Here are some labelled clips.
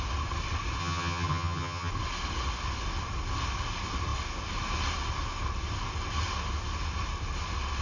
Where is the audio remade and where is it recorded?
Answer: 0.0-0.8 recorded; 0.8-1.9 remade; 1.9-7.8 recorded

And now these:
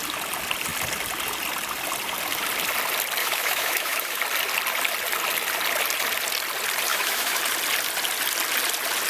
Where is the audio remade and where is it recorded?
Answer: 0.0-3.2 recorded; 3.2-4.2 remade; 4.2-6.9 recorded; 6.9-7.4 remade; 7.4-9.1 recorded

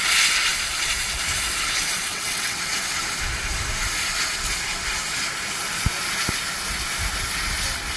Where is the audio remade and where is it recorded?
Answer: 0.0-2.1 recorded; 2.1-2.6 remade; 2.6-8.0 recorded

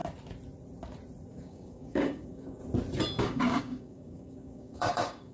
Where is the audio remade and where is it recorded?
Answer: 0.0-1.3 recorded; 1.3-2.6 remade; 2.6-3.2 recorded; 3.2-5.3 remade